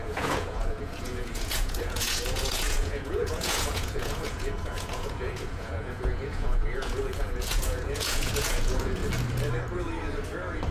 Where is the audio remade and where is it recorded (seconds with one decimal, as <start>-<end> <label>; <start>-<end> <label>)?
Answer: 0.0-9.0 remade; 9.0-10.7 recorded